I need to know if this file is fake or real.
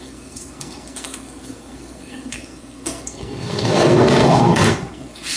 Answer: fake